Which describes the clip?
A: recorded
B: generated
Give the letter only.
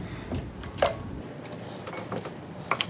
A